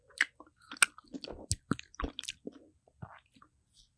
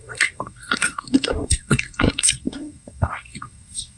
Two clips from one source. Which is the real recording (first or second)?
first